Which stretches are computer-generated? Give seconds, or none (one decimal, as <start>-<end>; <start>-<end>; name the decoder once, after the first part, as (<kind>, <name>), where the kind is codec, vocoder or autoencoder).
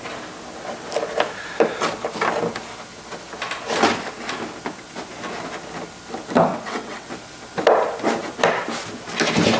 6.5-7.1 (vocoder, WaveNeXt)